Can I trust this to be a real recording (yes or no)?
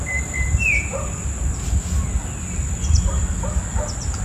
yes